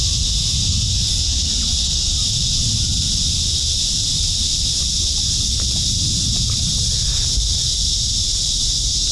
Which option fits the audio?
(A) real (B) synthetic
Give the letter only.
A